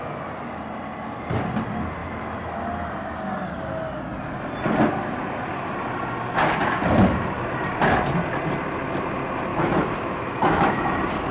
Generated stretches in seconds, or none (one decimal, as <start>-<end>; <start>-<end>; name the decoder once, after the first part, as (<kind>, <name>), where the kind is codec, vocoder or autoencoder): 9.5-10.9 (autoencoder, DAC-VAE)